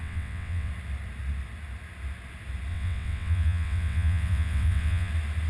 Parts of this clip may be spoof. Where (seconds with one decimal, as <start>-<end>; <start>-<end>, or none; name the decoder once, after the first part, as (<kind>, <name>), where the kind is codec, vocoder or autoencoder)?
0.0-0.7 (vocoder, WaveNeXt); 2.7-5.1